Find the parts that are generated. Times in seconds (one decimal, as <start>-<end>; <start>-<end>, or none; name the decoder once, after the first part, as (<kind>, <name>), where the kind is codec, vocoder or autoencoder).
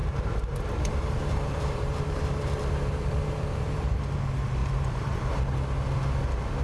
0.0-4.0 (vocoder, BigVGAN v2); 4.6-5.4